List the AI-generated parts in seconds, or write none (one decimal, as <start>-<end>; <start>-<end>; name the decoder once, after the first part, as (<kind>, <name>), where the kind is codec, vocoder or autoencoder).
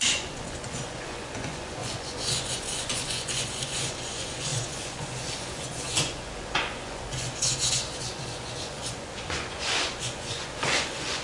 0.0-11.2 (vocoder, Vocos)